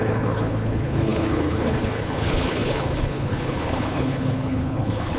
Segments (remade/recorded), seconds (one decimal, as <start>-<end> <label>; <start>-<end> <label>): 0.0-5.2 remade

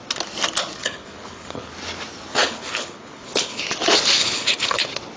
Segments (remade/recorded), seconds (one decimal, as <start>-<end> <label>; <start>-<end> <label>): 0.0-0.8 recorded; 0.8-1.7 remade; 1.7-2.3 recorded; 2.3-3.6 remade; 3.6-4.2 recorded; 4.2-4.8 remade; 4.8-5.2 recorded

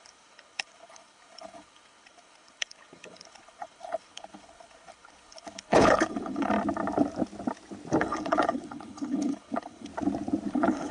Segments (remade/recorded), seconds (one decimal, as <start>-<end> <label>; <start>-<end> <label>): 0.0-6.5 remade; 6.5-8.0 recorded; 8.0-9.9 remade; 9.9-10.5 recorded; 10.5-10.9 remade

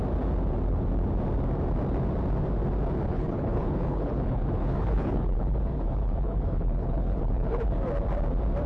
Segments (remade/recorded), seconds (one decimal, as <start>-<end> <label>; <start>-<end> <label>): 0.0-3.1 recorded; 3.1-7.6 remade; 7.6-8.7 recorded